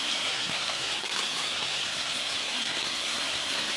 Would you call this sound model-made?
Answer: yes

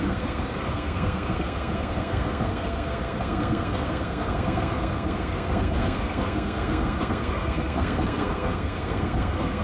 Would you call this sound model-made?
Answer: yes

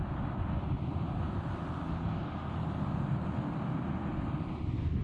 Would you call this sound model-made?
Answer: no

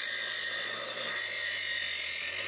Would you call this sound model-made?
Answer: no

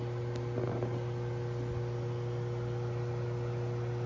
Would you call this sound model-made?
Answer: no